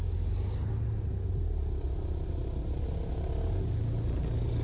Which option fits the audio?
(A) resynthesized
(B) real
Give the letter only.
B